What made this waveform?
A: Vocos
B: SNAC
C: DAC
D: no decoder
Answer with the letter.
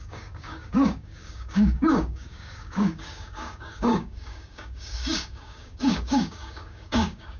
C